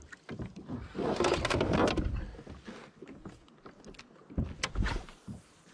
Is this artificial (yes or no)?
no